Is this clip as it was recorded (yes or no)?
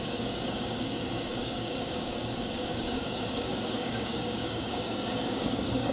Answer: no